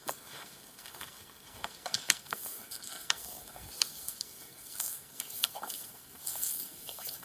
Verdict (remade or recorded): remade